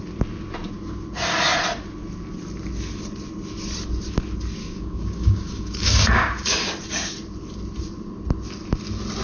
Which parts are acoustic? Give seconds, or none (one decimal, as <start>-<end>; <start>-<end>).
0.0-4.6; 6.7-9.2